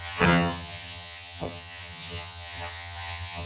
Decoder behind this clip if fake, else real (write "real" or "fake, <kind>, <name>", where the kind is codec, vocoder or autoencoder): fake, vocoder, HiFi-GAN